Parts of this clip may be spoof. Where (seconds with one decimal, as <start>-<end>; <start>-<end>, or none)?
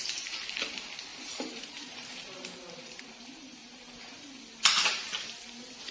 1.1-4.4